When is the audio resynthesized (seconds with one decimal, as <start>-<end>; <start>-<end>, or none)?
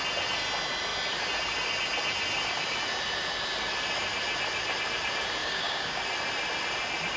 5.4-6.0